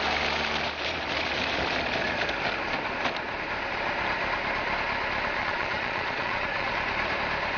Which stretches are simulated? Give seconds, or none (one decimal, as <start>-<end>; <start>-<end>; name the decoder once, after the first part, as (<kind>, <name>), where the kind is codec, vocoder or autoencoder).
5.4-6.7 (vocoder, Vocos)